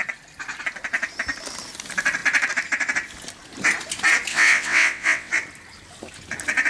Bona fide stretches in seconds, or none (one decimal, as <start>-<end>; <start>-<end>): 0.0-4.3; 5.3-6.7